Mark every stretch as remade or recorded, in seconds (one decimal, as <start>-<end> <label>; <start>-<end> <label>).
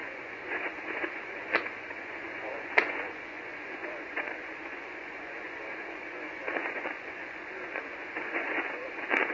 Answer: 0.0-9.3 remade